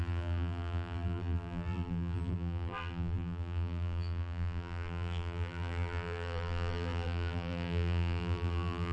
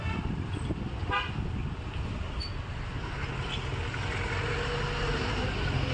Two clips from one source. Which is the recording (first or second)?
second